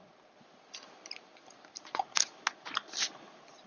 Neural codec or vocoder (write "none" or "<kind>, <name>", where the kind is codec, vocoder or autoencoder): none